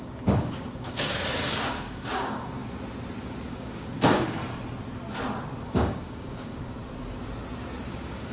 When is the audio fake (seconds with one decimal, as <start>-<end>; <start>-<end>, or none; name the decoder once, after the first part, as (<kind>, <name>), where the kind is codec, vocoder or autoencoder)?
0.0-2.6 (codec, DAC); 3.2-4.4; 5.6-6.8; 7.9-8.3